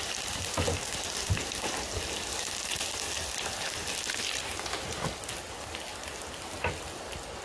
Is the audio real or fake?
real